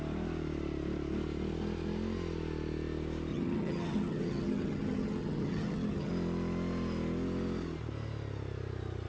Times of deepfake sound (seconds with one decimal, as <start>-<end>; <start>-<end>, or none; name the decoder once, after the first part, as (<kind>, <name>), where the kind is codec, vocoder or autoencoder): 3.3-6.1 (vocoder, HiFi-GAN)